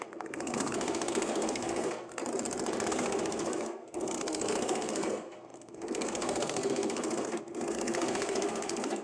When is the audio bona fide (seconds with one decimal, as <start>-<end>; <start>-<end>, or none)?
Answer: 2.2-2.9